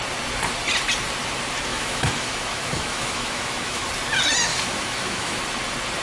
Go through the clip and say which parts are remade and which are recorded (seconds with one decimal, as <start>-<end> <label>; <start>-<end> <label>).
0.0-1.7 recorded; 1.7-3.9 remade; 3.9-4.5 recorded; 4.5-5.4 remade; 5.4-6.0 recorded

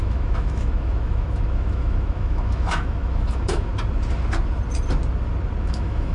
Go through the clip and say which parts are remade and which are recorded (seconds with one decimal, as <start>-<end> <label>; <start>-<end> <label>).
0.0-3.7 remade; 3.7-5.6 recorded; 5.6-6.1 remade